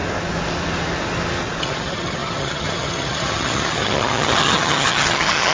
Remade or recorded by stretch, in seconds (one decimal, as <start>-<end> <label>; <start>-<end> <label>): 0.0-1.6 recorded; 1.6-5.5 remade